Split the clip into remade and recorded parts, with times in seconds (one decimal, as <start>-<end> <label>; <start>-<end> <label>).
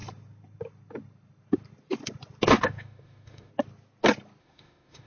0.0-2.6 recorded; 2.6-3.5 remade; 3.5-4.4 recorded; 4.4-5.1 remade